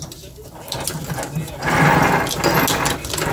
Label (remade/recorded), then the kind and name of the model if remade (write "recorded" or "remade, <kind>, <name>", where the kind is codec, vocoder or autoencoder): recorded